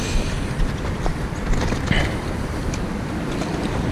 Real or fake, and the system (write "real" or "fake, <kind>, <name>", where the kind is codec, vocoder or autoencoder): real